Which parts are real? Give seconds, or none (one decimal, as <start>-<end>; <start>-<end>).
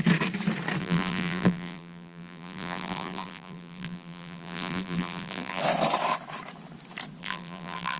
0.0-0.8; 5.6-7.2